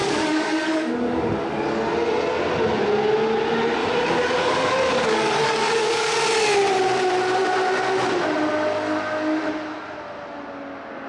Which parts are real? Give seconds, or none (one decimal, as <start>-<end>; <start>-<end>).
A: 1.3-3.8; 6.1-11.1